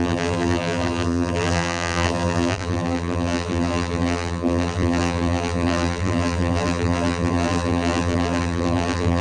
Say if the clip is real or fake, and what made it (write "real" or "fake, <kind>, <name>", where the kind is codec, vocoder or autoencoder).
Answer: fake, vocoder, BigVGAN v2